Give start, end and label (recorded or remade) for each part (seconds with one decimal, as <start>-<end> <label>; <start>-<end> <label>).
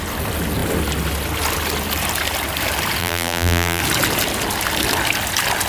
0.0-3.0 recorded; 3.0-3.8 remade; 3.8-5.7 recorded